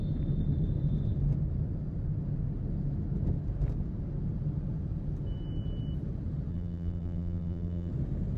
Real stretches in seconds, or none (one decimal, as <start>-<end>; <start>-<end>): 0.0-6.5; 7.9-8.4